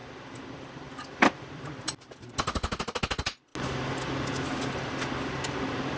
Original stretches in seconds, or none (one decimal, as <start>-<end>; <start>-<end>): 0.0-6.0